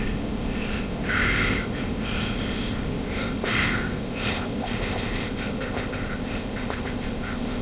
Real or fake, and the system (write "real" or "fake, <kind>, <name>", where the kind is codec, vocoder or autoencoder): fake, codec, ZipCodec